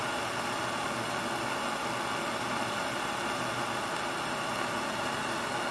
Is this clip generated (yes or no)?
no